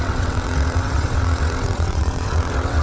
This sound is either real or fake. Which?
fake